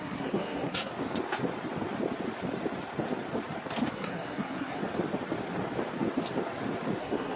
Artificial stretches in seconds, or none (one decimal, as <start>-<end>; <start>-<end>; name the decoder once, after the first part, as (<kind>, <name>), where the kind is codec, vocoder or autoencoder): 0.0-0.9 (codec, SNAC); 3.9-4.8; 7.0-7.4